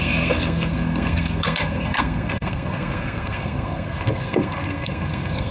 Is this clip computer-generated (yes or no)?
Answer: yes